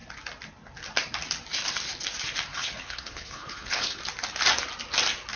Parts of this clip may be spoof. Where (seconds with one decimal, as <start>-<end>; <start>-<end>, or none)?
2.5-4.0